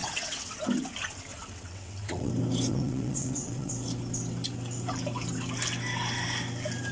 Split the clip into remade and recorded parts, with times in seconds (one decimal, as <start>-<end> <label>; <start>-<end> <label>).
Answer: 0.0-0.6 remade; 0.6-1.3 recorded; 1.3-2.3 remade; 2.3-2.7 recorded; 2.7-3.7 remade; 3.7-6.9 recorded